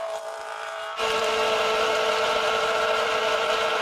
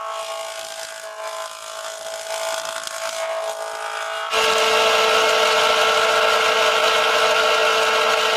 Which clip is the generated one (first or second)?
first